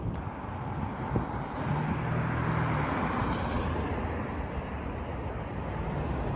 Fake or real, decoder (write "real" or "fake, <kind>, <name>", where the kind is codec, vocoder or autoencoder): real